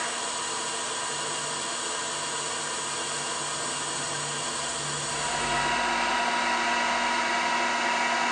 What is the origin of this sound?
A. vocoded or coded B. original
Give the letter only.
B